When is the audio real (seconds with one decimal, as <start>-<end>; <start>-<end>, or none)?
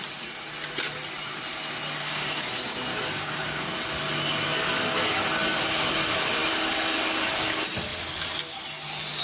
0.0-2.0; 2.5-2.9; 3.7-9.2